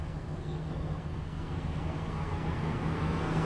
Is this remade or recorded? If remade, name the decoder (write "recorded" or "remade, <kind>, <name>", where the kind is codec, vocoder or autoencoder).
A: remade, codec, SNAC